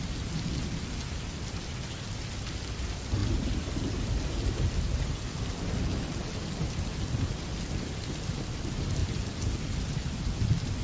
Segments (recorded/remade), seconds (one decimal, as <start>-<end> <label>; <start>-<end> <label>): 0.0-10.8 recorded